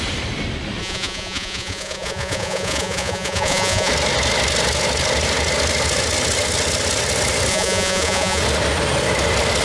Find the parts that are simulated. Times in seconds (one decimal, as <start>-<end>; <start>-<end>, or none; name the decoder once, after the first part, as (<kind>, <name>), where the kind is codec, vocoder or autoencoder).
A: 0.8-3.9 (vocoder, Vocos); 7.5-8.4